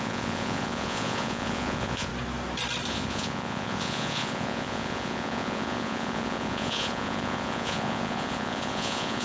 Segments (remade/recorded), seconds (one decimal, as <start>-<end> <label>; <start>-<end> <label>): 0.0-2.1 remade; 2.1-2.9 recorded; 2.9-9.2 remade